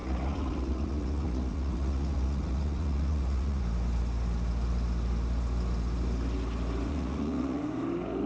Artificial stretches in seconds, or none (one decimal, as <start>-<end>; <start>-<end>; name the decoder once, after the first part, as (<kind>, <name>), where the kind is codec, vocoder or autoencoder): 0.0-3.6 (vocoder, Vocos); 6.9-7.6